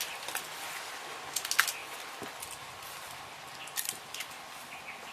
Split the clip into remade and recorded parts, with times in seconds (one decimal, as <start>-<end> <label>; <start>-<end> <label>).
0.0-5.1 recorded